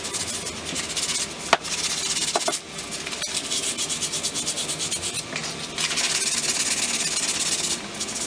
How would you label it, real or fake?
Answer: real